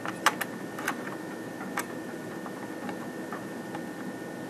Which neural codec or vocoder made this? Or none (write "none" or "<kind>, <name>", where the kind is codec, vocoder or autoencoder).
none